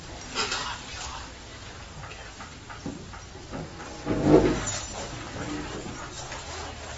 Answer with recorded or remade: recorded